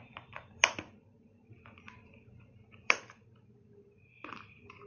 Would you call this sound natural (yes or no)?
no